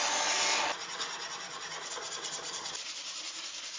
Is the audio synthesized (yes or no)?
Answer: no